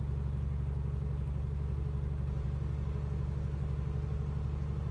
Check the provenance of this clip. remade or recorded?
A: recorded